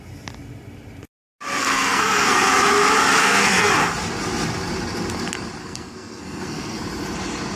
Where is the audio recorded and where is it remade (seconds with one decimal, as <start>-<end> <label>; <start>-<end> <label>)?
0.0-1.6 recorded; 1.6-2.5 remade; 2.5-3.2 recorded; 3.2-3.7 remade; 3.7-5.6 recorded; 5.6-6.8 remade; 6.8-7.6 recorded